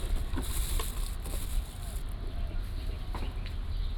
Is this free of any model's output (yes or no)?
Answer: yes